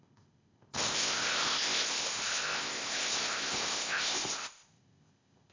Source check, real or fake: fake